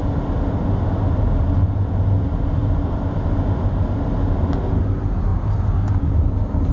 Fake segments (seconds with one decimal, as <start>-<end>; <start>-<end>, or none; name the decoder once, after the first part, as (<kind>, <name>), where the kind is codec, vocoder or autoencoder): none